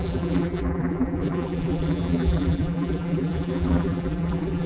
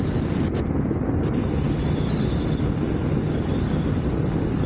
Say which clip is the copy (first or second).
first